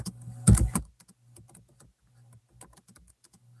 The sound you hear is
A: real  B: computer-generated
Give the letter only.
A